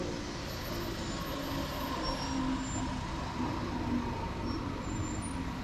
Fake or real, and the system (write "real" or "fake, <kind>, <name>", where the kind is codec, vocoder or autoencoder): real